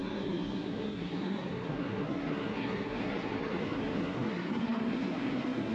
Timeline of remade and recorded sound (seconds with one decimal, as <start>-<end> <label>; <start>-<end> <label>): 0.0-5.7 remade